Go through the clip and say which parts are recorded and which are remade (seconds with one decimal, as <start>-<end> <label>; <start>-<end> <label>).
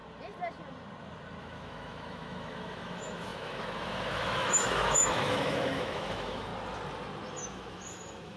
0.0-1.4 recorded; 1.4-6.5 remade; 6.5-7.4 recorded; 7.4-8.4 remade